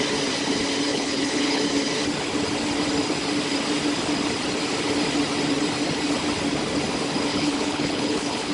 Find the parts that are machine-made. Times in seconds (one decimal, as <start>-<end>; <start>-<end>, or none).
0.9-1.6; 7.3-8.5